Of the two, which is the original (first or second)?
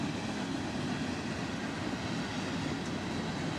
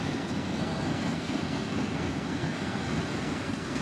first